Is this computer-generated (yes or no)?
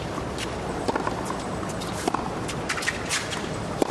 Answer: yes